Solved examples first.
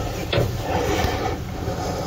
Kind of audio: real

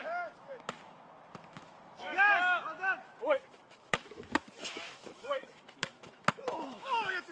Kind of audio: fake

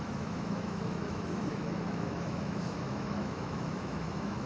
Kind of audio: fake